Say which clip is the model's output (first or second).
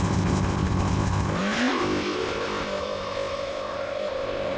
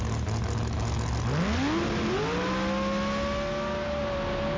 first